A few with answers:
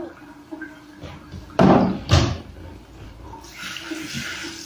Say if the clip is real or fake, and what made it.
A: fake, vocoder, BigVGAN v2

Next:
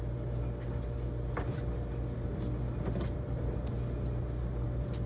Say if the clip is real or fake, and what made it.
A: real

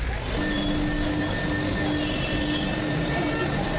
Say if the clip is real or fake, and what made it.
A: real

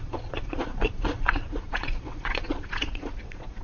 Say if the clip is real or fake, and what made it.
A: fake, vocoder, Vocos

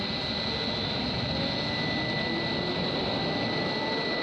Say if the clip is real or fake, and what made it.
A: real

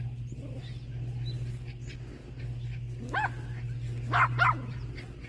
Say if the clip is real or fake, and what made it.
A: real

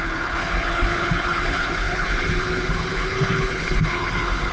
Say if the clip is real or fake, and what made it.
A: fake, codec, HILCodec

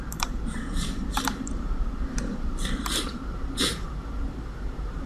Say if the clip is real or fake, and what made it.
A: fake, vocoder, BigVGAN v2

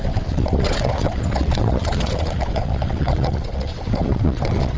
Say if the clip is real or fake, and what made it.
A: fake, vocoder, WaveNeXt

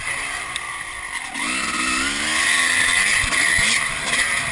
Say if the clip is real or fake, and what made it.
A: real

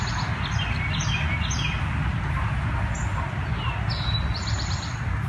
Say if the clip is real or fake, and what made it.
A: real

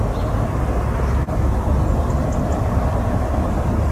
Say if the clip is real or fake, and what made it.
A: real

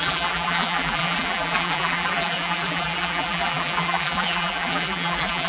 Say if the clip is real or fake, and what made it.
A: fake, vocoder, BigVGAN v2